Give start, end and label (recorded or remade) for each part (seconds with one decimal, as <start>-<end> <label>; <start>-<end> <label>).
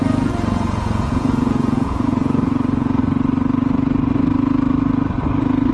0.0-3.0 remade; 3.0-5.7 recorded